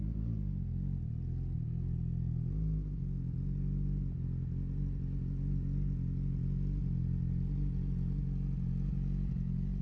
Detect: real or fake real